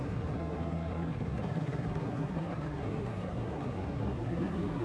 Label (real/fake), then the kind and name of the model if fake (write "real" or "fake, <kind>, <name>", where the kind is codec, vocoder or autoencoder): fake, codec, SNAC